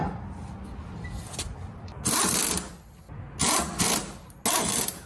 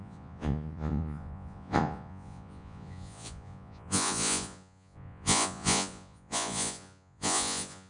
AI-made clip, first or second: second